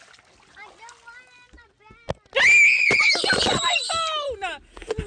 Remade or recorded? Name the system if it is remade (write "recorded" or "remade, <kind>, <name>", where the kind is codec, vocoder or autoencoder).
recorded